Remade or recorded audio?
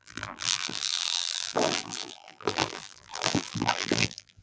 remade